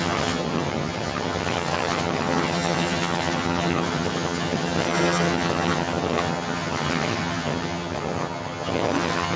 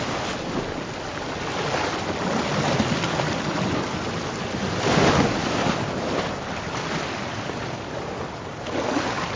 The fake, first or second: first